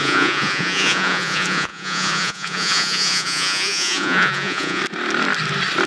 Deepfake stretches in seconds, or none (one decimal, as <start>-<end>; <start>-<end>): 0.0-4.8